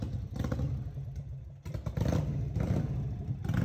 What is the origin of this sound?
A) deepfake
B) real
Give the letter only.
B